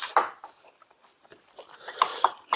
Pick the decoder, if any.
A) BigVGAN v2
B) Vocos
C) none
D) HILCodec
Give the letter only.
C